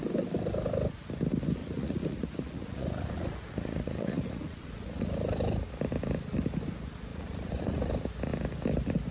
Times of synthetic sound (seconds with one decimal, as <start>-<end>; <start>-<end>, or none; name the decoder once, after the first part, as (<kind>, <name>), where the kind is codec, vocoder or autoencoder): 1.6-5.1 (vocoder, Vocos); 7.1-7.9